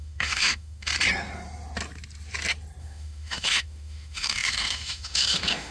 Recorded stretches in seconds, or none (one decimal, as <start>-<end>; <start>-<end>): 0.9-2.8